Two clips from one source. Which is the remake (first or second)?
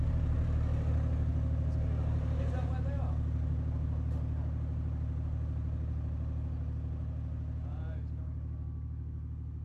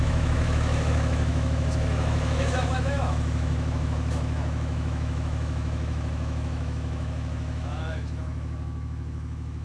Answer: second